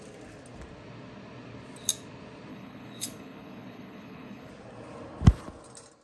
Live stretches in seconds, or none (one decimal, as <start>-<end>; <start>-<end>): 0.0-2.5; 4.5-6.0